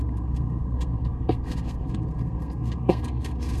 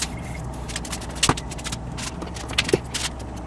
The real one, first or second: second